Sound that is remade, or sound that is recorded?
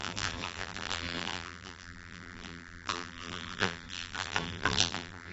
remade